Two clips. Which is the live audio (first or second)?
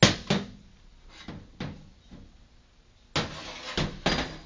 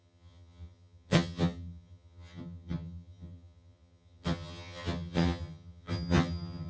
first